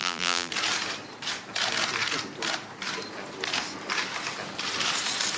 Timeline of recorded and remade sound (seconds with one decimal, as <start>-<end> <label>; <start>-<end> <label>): 0.0-0.5 remade; 0.5-5.4 recorded